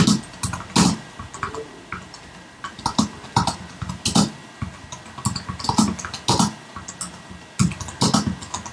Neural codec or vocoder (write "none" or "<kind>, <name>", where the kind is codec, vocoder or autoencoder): none